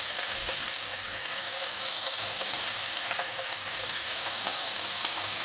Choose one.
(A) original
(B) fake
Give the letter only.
B